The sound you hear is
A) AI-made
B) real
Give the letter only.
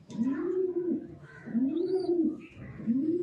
A